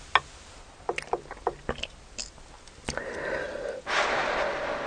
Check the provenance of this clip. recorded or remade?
recorded